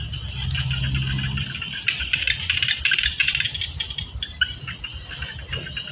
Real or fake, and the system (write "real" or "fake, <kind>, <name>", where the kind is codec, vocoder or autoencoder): real